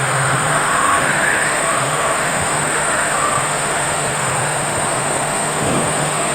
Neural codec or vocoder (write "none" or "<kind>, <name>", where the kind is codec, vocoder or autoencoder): autoencoder, DAC-VAE